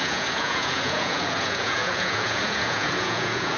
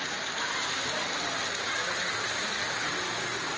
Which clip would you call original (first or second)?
second